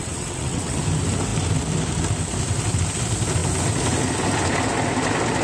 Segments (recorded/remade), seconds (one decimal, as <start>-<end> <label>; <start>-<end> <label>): 0.0-0.8 remade; 0.8-5.4 recorded